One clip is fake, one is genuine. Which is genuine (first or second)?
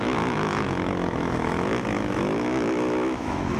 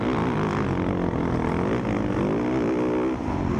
second